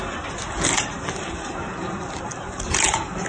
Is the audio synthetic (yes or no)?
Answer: no